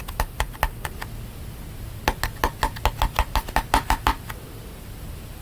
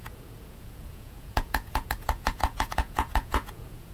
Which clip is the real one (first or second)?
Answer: first